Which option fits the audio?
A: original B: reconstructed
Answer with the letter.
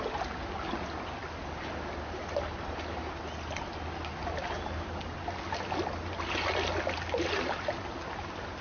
A